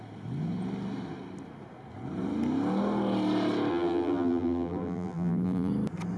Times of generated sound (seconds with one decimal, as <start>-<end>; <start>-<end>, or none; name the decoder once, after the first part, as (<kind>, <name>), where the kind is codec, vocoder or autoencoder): 3.7-5.7 (vocoder, BigVGAN v2)